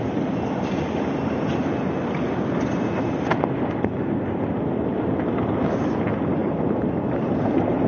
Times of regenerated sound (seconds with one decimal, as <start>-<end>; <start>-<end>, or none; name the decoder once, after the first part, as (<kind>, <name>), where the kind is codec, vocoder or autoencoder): none